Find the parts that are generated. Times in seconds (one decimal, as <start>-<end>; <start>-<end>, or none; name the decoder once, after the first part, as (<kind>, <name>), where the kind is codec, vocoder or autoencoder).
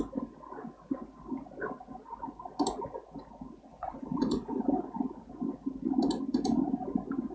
3.7-4.6 (vocoder, Vocos)